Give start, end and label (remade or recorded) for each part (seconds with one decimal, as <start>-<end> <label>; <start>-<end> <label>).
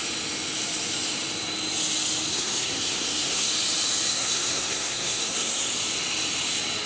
0.0-2.3 recorded; 2.3-3.5 remade; 3.5-4.1 recorded; 4.1-5.7 remade; 5.7-6.9 recorded